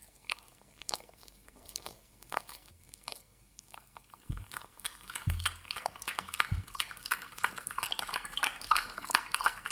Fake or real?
fake